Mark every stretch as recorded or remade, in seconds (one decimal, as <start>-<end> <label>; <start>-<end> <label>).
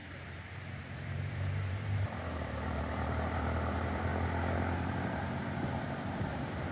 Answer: 0.0-4.1 remade; 4.1-5.8 recorded; 5.8-6.7 remade